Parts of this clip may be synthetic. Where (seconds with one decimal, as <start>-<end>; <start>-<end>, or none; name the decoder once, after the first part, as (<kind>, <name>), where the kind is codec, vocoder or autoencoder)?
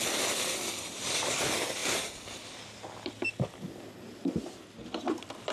none